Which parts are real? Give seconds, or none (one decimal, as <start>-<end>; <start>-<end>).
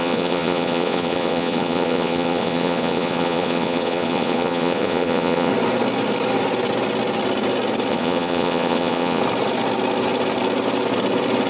5.5-7.9; 9.2-11.5